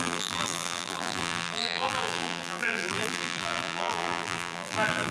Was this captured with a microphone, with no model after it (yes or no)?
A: no